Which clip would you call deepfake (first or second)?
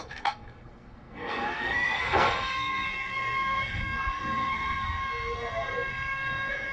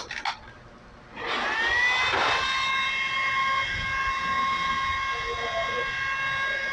first